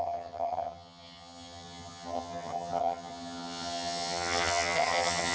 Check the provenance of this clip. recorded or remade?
remade